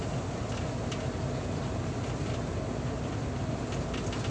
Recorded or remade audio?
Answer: recorded